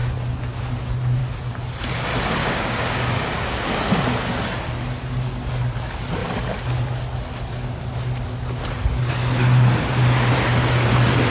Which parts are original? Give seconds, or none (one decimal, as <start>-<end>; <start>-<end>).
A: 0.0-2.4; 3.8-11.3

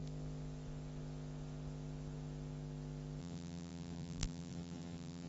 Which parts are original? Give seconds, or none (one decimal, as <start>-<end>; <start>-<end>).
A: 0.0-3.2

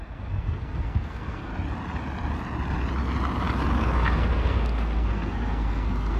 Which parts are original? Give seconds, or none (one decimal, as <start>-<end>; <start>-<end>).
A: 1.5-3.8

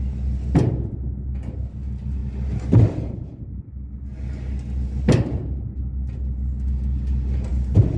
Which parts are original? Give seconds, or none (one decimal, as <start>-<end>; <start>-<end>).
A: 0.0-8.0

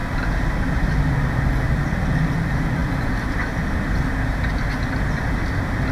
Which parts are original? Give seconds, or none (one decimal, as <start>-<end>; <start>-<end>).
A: 0.0-5.9

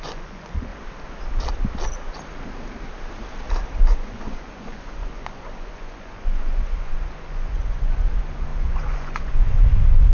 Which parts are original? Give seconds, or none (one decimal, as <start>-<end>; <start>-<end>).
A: 0.7-3.8